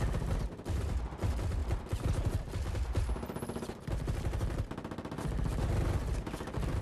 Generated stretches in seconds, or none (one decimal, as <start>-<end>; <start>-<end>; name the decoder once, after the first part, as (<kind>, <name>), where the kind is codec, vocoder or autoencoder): none